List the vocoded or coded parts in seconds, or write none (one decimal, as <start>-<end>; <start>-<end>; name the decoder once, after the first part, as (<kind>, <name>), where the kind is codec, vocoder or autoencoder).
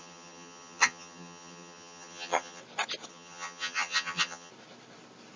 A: 0.0-2.6 (vocoder, HiFi-GAN); 3.1-4.5